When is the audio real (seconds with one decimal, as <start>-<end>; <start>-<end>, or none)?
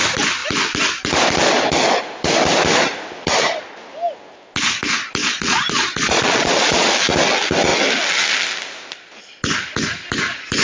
0.0-5.2; 6.9-10.6